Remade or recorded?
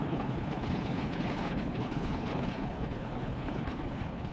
remade